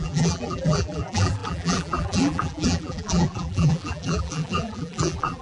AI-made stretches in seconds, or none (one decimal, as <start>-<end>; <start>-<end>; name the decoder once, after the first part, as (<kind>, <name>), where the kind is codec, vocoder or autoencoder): 0.0-5.4 (vocoder, BigVGAN v2)